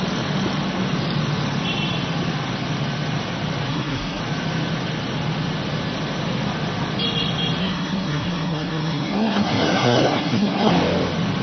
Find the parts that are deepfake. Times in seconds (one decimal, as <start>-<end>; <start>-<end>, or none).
3.7-4.2; 7.6-10.7